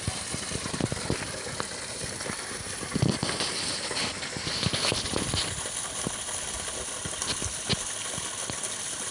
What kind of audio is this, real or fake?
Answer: real